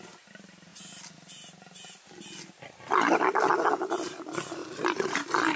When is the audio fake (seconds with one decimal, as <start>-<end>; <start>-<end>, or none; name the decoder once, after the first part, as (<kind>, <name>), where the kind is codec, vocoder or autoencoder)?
none